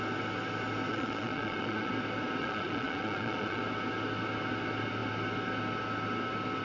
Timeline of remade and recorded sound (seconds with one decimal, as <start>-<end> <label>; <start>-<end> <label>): 0.0-0.9 recorded; 0.9-1.9 remade; 1.9-2.4 recorded; 2.4-3.6 remade; 3.6-6.6 recorded